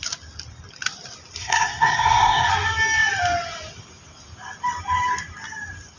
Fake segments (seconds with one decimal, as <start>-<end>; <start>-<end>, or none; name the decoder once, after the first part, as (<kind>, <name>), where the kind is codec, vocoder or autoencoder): 1.4-2.5 (codec, SNAC)